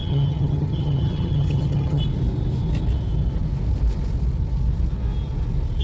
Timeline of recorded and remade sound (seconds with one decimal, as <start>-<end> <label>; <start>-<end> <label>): 0.0-2.0 remade; 2.0-5.8 recorded